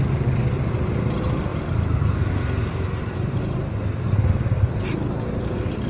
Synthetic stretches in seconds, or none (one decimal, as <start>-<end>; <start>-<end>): none